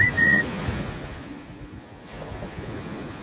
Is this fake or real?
fake